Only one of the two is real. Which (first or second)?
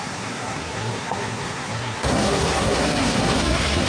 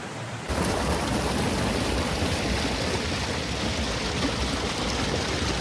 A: second